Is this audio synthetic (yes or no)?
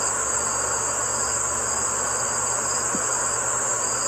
no